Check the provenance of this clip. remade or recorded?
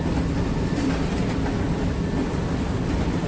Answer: recorded